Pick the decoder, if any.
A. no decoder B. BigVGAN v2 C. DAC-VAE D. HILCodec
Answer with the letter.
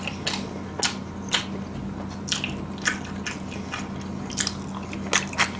A